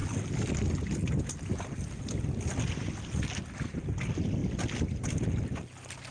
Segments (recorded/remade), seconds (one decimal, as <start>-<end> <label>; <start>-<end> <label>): 0.0-6.1 recorded